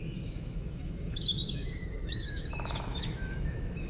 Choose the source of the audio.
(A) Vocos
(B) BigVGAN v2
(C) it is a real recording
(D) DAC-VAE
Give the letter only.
D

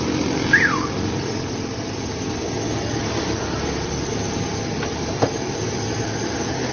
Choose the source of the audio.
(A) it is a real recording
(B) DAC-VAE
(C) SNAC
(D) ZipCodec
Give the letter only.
A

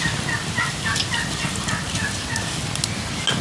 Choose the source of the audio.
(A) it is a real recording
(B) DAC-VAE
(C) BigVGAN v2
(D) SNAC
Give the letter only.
A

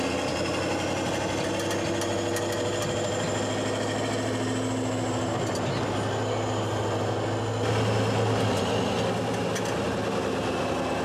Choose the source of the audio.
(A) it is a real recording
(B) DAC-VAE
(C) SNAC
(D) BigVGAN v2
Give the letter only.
A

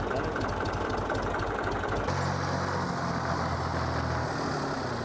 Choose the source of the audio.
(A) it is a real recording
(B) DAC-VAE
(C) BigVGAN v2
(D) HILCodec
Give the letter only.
A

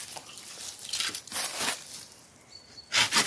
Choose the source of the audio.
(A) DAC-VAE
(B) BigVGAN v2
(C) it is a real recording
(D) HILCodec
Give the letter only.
C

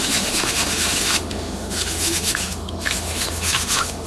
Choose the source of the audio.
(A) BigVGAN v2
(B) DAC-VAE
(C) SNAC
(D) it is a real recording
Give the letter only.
B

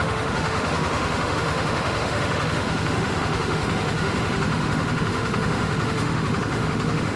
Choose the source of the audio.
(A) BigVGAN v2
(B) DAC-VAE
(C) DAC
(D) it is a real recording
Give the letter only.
B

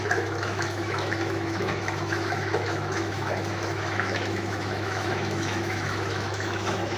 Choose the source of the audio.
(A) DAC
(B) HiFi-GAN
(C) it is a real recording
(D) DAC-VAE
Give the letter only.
D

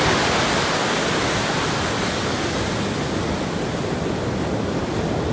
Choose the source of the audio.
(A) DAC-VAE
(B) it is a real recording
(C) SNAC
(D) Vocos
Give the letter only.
B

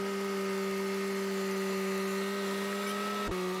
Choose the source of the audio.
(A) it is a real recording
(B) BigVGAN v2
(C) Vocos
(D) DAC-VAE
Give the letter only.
A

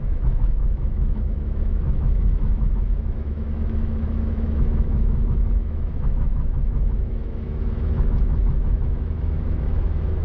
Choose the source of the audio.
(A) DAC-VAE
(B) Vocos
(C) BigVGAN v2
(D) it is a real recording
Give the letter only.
A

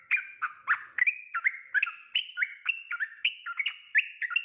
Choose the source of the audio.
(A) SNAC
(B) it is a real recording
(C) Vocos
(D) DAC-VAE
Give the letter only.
B